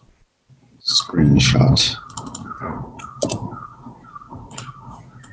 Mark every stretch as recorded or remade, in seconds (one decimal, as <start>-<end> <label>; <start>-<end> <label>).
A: 0.0-1.7 recorded; 1.7-5.3 remade